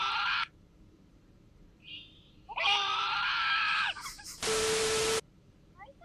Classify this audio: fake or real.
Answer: fake